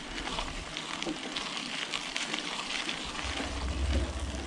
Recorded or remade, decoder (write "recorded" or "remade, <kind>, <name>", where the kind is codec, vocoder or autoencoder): recorded